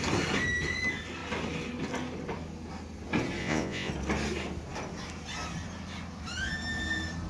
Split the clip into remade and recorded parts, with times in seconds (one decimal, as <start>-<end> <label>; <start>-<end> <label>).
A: 0.0-3.4 recorded; 3.4-3.9 remade; 3.9-7.3 recorded